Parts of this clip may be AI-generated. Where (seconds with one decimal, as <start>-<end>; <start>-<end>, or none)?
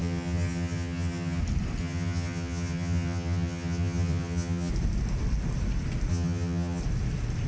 0.0-1.4; 1.8-4.7; 6.1-6.8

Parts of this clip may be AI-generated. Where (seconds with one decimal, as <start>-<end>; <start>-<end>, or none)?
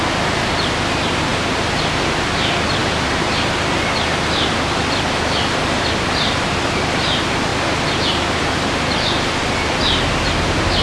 2.8-3.4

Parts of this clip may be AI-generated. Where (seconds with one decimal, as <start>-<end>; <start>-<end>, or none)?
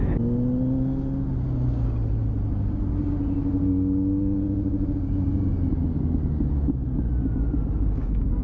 none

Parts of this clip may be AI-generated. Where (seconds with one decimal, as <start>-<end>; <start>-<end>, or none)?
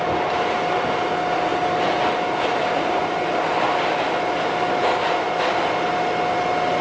none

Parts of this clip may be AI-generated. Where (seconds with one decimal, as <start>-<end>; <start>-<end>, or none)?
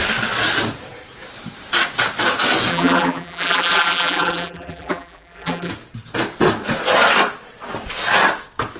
2.7-5.7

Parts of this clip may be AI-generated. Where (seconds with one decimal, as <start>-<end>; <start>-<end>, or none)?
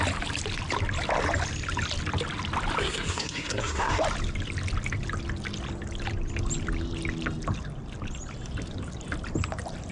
2.8-4.0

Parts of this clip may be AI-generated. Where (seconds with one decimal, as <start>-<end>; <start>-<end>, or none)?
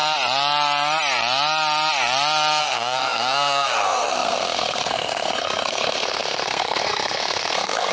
2.6-7.9